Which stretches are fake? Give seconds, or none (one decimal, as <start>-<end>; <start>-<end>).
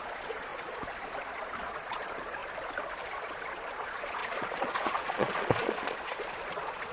0.0-2.4; 3.1-6.9